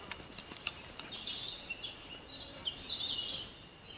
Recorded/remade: recorded